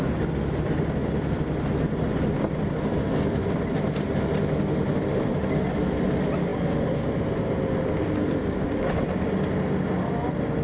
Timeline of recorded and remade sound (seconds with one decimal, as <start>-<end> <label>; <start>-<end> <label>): 0.0-10.6 recorded